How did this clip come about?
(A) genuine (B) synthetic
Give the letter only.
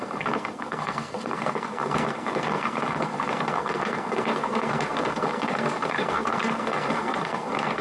B